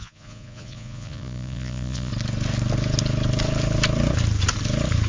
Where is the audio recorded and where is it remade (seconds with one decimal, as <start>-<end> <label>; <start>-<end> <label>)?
0.0-2.1 remade; 2.1-5.1 recorded